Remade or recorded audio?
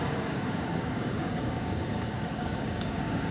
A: remade